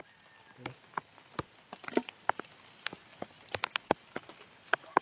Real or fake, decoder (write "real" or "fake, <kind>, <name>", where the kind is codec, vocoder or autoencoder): real